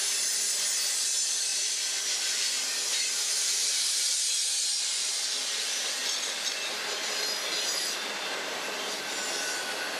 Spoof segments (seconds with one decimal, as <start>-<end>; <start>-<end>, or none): 1.5-2.5; 2.9-5.2